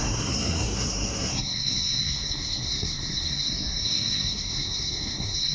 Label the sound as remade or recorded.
remade